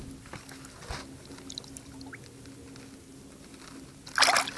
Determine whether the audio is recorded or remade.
recorded